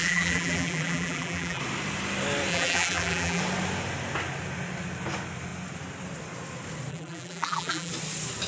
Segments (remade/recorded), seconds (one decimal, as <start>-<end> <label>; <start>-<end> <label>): 0.0-1.6 remade; 1.6-2.5 recorded; 2.5-3.4 remade; 3.4-6.9 recorded; 6.9-7.9 remade; 7.9-8.5 recorded